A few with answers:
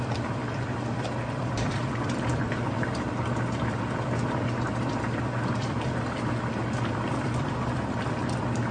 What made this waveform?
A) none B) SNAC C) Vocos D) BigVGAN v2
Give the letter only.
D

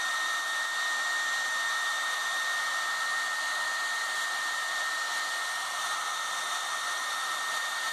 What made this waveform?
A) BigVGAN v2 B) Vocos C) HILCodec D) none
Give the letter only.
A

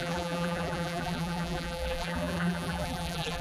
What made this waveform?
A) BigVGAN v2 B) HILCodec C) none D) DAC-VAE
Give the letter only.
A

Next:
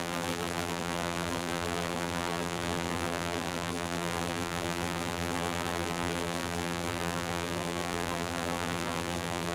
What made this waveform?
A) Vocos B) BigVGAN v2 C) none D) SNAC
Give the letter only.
B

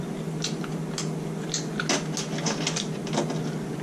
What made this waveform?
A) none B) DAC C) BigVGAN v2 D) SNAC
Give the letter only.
A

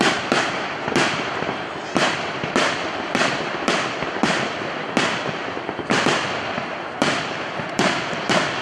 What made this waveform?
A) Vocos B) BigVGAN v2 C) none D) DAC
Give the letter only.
B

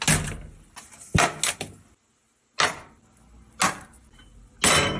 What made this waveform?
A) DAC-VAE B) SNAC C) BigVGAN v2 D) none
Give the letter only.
D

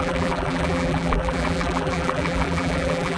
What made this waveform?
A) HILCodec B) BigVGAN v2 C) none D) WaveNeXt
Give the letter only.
B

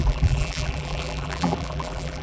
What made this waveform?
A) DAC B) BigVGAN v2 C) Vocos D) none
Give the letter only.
B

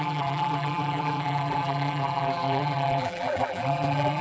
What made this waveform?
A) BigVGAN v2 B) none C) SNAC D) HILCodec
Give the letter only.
A